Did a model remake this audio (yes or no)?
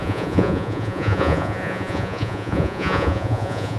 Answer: yes